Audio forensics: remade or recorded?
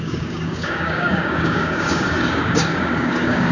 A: remade